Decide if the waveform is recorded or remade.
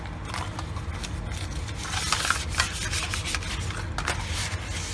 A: recorded